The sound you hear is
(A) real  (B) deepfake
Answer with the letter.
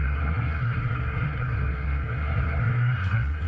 B